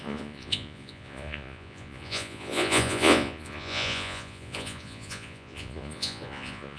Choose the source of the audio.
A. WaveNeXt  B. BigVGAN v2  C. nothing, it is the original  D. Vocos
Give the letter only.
D